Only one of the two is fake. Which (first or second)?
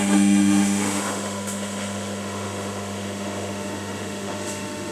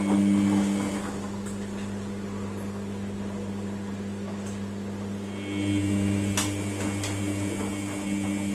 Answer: first